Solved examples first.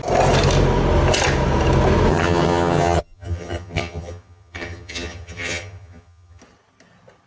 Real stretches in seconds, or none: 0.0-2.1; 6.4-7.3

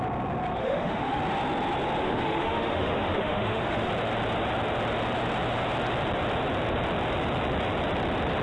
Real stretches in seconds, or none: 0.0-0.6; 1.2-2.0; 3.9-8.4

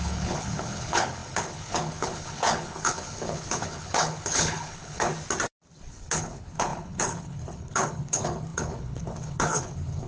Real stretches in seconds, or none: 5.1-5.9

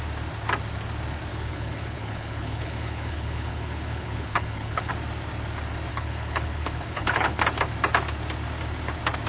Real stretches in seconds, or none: 0.0-1.3; 4.9-5.9; 7.4-9.3

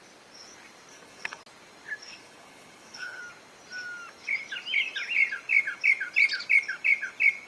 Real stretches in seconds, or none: 0.0-0.9; 1.4-2.1; 3.2-7.5